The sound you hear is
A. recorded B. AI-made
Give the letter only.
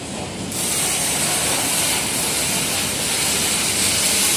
A